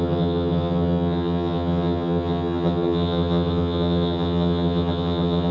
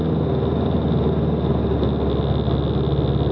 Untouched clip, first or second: second